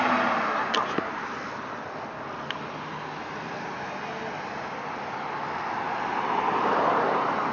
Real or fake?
real